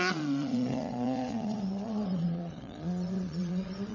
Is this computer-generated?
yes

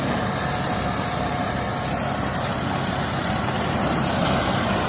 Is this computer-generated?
no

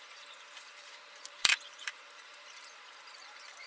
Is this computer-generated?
yes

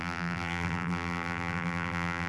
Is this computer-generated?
yes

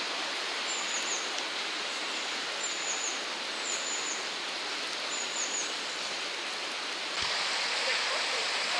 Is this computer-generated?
no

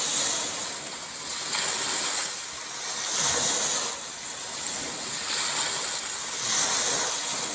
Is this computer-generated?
no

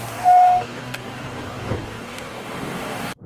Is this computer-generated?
yes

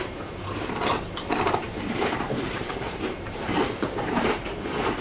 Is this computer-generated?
yes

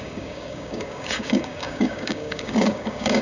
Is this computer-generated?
yes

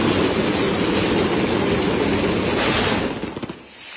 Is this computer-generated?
no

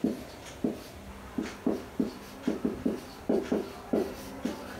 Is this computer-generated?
no